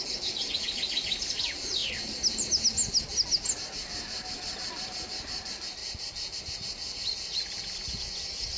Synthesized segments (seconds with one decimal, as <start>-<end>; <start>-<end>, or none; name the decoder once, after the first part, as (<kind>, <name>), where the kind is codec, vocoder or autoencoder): none

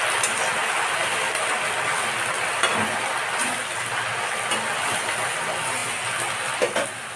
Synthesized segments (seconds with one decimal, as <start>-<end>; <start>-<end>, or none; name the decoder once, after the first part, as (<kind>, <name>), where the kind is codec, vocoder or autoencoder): none

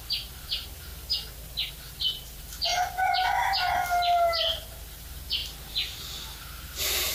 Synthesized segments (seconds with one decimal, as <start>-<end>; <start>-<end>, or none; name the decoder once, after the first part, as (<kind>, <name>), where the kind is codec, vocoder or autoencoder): 0.0-0.9 (vocoder, BigVGAN v2); 1.7-5.4; 6.4-7.1

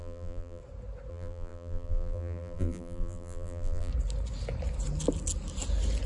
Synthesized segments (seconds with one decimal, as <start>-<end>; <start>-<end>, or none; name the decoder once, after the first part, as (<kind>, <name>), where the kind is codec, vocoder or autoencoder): 0.0-0.6 (vocoder, BigVGAN v2); 1.1-3.9

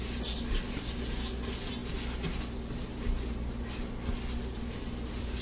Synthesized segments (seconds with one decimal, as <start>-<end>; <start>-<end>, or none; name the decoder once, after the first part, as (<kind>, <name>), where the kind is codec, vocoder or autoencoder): 4.1-5.4 (vocoder, BigVGAN v2)

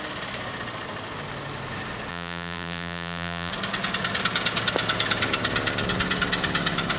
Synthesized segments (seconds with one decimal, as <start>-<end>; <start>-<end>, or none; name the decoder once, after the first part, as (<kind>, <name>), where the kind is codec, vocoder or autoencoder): 2.1-3.5 (vocoder, BigVGAN v2)

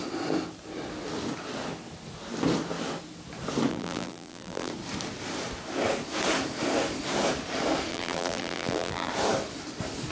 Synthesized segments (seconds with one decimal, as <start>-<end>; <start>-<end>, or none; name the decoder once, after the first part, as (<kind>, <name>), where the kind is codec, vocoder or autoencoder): 3.7-4.7 (vocoder, BigVGAN v2); 7.9-9.1

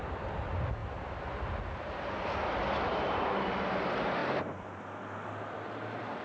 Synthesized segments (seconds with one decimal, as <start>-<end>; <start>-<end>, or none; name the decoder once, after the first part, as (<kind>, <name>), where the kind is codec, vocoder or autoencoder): none